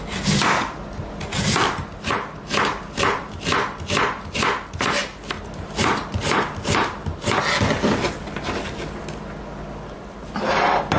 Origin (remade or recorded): recorded